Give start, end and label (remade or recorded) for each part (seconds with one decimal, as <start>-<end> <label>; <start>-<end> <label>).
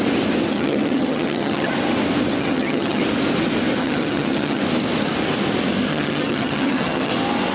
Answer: 0.0-0.5 recorded; 0.5-1.7 remade; 1.7-2.4 recorded; 2.4-3.0 remade; 3.0-3.8 recorded; 3.8-4.6 remade; 4.6-5.9 recorded; 5.9-7.1 remade; 7.1-7.5 recorded